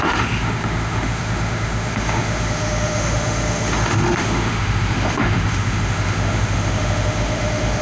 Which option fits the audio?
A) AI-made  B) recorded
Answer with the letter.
A